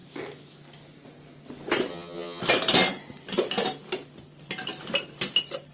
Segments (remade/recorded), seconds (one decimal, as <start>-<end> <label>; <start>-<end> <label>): 0.0-1.9 recorded; 1.9-2.4 remade; 2.4-5.7 recorded